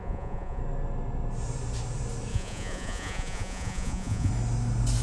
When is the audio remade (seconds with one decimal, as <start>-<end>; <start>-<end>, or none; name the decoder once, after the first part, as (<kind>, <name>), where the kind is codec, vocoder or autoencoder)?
0.0-0.6 (vocoder, Vocos); 2.3-4.3